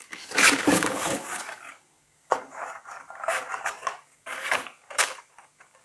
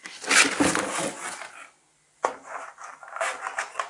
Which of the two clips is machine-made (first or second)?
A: first